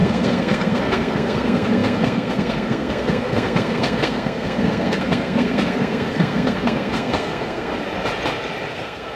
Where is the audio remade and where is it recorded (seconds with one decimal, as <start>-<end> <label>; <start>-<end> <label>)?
0.0-7.7 remade; 7.7-8.7 recorded; 8.7-9.2 remade